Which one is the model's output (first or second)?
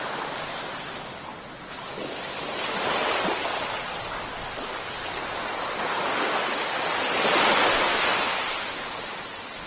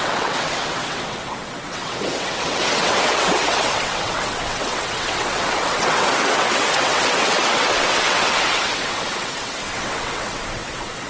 second